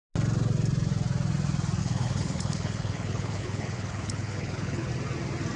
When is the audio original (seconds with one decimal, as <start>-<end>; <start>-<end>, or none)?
0.0-1.8; 4.9-5.6